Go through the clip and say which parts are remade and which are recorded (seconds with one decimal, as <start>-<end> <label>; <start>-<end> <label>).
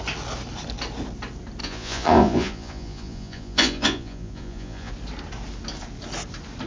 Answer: 0.0-1.6 recorded; 1.6-4.9 remade; 4.9-6.7 recorded